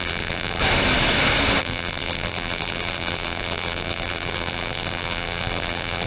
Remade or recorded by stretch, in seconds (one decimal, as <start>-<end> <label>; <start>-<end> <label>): 0.0-0.6 remade; 0.6-1.6 recorded; 1.6-6.1 remade